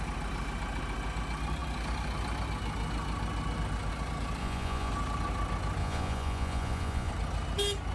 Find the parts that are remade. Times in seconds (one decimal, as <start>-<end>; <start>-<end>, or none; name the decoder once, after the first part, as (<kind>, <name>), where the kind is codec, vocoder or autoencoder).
4.4-4.9 (vocoder, Vocos); 5.8-7.1